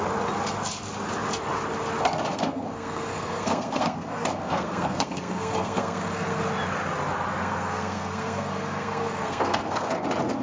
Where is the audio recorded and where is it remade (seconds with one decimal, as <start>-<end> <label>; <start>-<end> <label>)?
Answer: 0.0-2.3 recorded; 2.3-6.4 remade; 6.4-7.4 recorded; 7.4-9.9 remade; 9.9-10.4 recorded